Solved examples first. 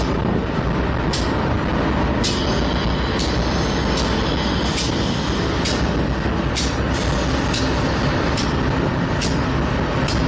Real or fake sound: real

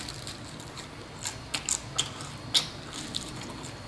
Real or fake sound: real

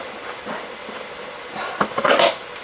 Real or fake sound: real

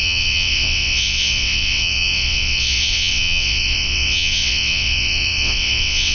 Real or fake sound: fake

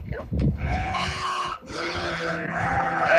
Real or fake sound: fake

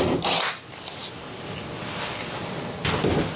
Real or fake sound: real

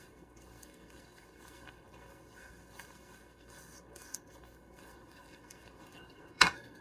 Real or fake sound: fake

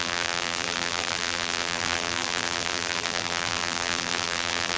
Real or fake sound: fake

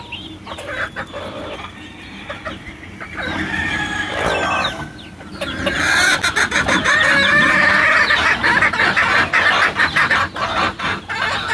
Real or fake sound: real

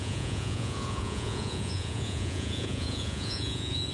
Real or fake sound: fake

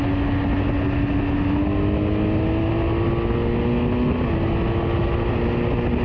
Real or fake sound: real